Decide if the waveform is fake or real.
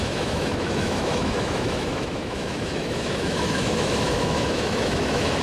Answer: fake